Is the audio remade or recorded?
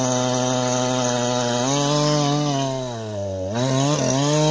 recorded